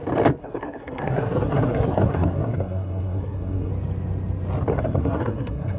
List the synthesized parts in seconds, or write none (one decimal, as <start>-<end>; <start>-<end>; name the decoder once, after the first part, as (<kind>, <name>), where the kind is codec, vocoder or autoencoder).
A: 0.4-3.7 (codec, SNAC); 4.7-5.8